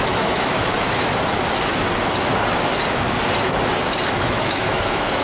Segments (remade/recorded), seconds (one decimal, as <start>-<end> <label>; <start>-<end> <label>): 0.0-1.1 remade; 1.1-4.2 recorded; 4.2-5.2 remade